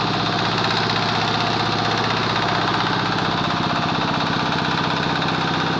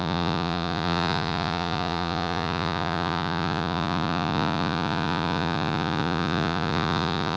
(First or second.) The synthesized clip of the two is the second